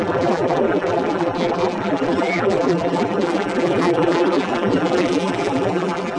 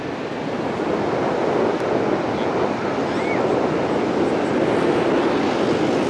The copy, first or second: first